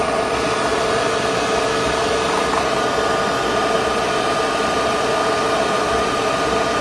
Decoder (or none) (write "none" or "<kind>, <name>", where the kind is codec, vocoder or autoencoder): none